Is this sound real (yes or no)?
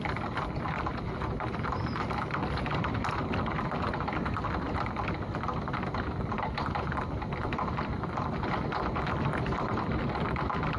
no